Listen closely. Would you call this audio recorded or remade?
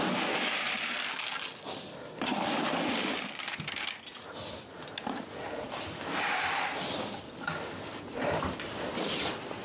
recorded